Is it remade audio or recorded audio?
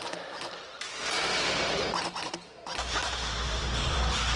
remade